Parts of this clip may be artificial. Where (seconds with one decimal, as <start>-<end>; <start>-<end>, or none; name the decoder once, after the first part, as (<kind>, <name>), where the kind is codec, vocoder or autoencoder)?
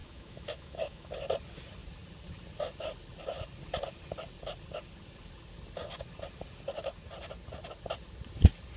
0.0-1.1 (autoencoder, DAC-VAE)